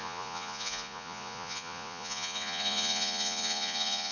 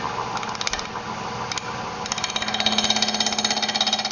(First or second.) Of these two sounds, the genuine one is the second